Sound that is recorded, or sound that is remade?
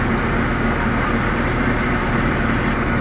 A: recorded